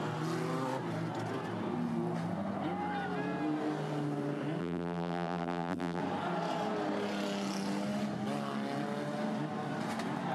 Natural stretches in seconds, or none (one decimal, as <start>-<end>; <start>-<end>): 0.0-4.6; 6.0-10.3